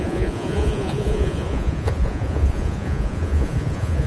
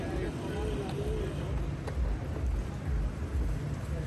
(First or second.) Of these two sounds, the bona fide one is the second